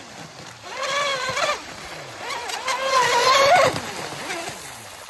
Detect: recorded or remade recorded